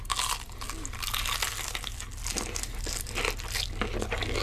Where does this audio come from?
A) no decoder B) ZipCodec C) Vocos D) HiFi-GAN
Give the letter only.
A